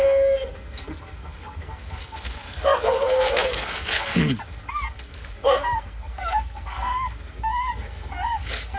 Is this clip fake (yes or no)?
yes